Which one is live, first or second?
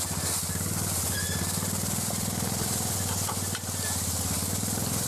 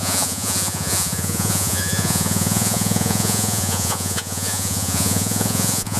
first